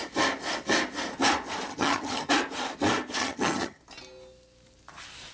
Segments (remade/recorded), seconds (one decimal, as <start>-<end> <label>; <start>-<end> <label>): 0.0-1.7 recorded; 1.7-2.3 remade; 2.3-3.2 recorded; 3.2-3.8 remade; 3.8-5.3 recorded

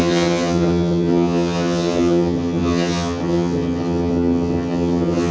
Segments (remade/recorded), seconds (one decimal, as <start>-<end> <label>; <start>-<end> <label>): 0.0-5.3 remade

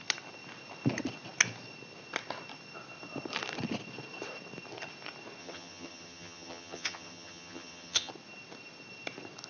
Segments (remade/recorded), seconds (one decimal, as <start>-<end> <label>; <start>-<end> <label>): 0.0-5.4 recorded; 5.4-8.1 remade; 8.1-9.5 recorded

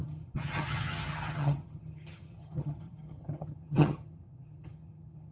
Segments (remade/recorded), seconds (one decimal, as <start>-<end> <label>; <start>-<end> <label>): 0.0-5.3 remade